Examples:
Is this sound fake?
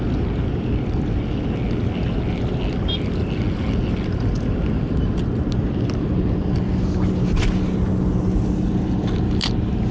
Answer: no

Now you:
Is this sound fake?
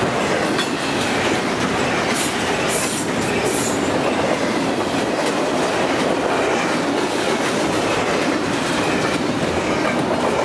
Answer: no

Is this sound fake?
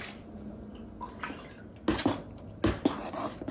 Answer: no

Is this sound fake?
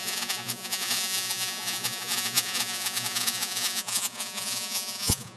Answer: yes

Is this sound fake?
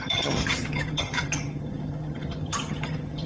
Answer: yes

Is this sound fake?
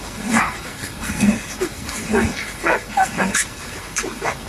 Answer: yes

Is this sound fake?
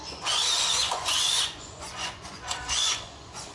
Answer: yes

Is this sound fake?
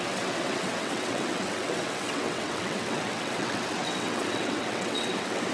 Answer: yes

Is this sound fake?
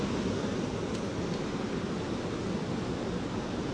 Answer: no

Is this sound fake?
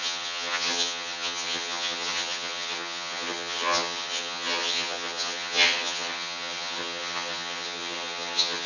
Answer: yes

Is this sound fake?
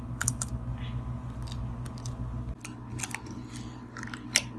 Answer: no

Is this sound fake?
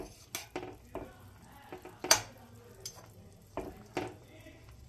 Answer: no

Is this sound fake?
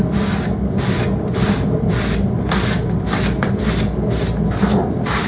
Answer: no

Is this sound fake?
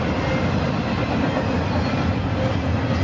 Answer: no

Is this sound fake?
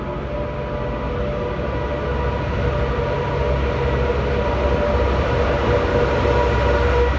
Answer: no